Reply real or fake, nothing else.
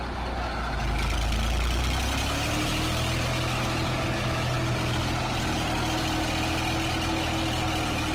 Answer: real